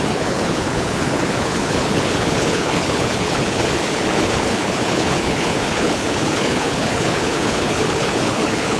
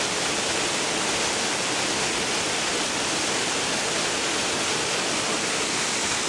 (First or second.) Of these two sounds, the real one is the second